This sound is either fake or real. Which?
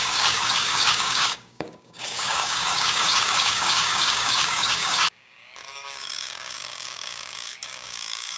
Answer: fake